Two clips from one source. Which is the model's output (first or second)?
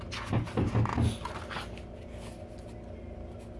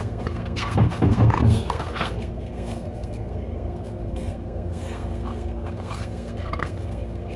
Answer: second